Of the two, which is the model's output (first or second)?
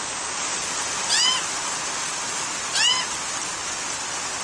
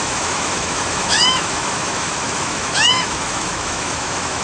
second